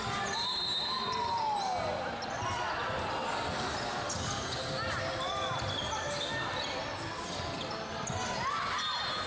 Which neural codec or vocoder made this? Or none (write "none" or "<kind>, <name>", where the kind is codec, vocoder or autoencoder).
none